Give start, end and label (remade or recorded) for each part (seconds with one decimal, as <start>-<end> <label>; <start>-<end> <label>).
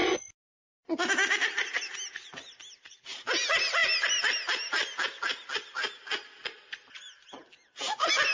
0.0-8.3 recorded